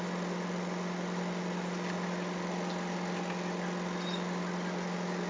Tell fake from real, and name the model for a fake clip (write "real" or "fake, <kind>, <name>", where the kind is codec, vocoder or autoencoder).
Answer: real